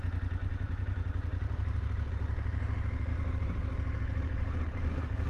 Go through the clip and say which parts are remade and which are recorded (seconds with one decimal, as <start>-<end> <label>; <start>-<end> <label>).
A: 0.0-0.4 recorded; 0.4-2.1 remade; 2.1-3.1 recorded; 3.1-5.3 remade